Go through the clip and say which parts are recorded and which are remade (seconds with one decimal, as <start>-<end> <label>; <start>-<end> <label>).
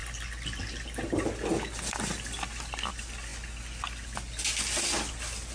0.0-5.5 recorded